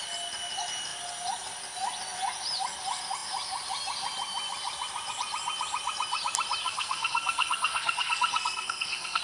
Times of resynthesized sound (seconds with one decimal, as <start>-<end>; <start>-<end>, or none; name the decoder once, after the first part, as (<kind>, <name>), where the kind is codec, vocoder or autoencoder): 6.6-9.2 (codec, SNAC)